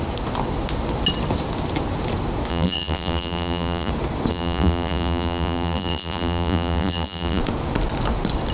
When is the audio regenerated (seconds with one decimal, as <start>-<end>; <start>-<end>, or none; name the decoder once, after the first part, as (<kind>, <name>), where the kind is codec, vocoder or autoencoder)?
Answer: 2.5-3.9 (vocoder, BigVGAN v2); 4.3-7.4